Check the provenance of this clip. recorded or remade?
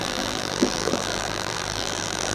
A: remade